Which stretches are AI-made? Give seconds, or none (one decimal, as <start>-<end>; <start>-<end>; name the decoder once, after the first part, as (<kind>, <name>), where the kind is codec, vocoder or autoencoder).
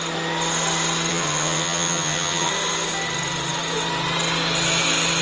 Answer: 1.1-2.5 (vocoder, HiFi-GAN)